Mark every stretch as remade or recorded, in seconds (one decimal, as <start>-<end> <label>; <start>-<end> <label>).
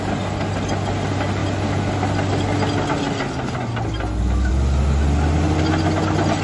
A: 0.0-6.4 recorded